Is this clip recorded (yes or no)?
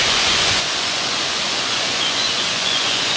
no